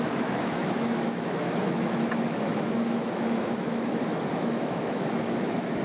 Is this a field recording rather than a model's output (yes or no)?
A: no